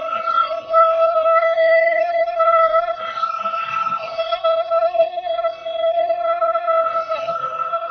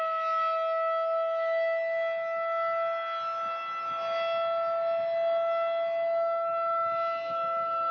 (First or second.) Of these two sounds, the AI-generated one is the first